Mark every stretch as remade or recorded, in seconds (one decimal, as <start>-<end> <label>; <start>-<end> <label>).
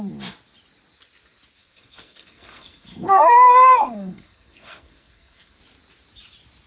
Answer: 0.0-1.6 recorded; 1.6-5.6 remade; 5.6-6.7 recorded